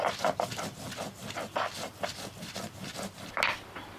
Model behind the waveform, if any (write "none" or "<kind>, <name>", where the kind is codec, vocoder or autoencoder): none